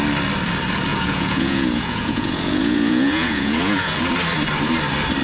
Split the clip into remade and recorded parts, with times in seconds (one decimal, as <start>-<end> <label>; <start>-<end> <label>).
0.0-0.9 recorded; 0.9-4.0 remade; 4.0-5.2 recorded